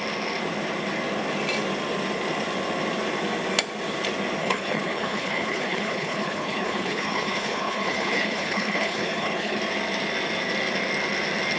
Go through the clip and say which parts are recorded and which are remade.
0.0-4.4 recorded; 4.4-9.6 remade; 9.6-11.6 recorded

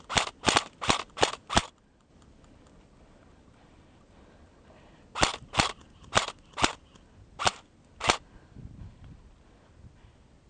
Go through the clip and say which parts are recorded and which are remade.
0.0-10.5 recorded

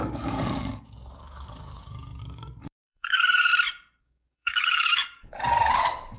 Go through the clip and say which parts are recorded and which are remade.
0.0-3.5 remade; 3.5-4.0 recorded; 4.0-6.2 remade

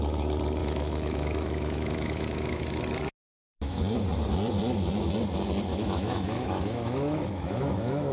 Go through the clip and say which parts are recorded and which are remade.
0.0-0.6 recorded; 0.6-2.6 remade; 2.6-3.2 recorded; 3.2-3.8 remade; 3.8-5.7 recorded; 5.7-8.1 remade